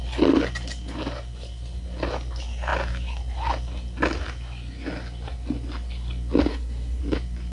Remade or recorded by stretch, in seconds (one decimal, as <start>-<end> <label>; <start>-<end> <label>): 0.0-6.5 recorded; 6.5-7.0 remade; 7.0-7.5 recorded